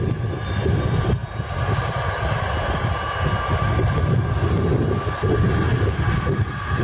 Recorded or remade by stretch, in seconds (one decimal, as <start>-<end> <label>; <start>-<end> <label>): 0.0-6.8 recorded